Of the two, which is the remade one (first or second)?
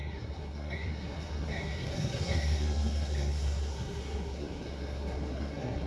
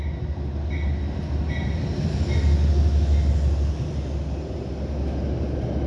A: first